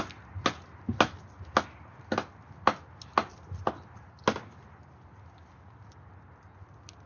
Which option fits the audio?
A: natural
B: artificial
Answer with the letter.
A